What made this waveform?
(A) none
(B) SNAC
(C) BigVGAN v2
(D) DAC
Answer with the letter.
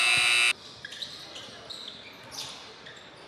A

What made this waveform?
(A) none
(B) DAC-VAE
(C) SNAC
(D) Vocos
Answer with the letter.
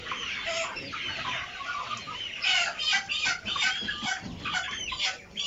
A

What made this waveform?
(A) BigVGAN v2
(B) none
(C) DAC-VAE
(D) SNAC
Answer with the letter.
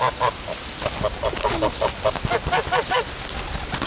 B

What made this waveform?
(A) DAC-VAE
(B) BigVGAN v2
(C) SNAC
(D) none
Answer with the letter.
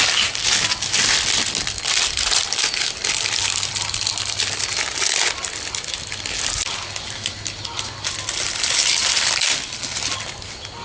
D